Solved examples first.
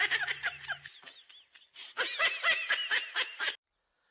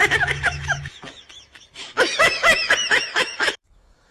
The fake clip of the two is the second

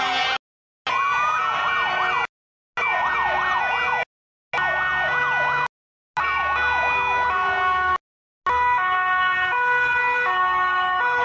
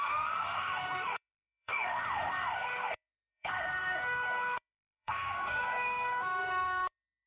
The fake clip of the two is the second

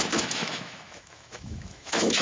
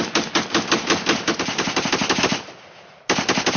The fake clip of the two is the first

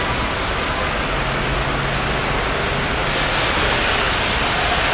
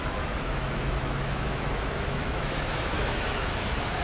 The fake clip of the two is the second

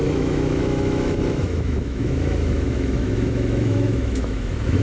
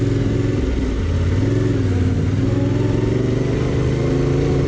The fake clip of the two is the first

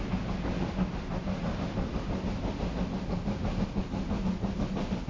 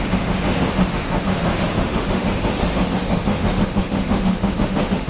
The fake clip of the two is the second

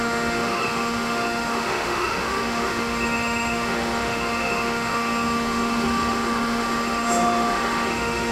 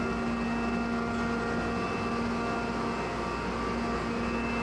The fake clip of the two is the first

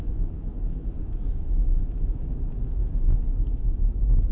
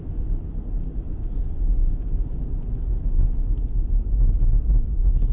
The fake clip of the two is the first